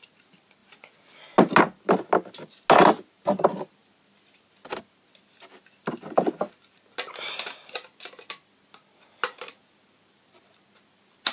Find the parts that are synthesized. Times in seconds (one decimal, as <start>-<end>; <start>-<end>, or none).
none